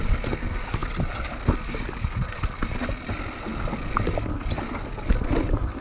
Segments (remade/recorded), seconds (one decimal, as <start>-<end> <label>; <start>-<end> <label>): 0.0-5.8 recorded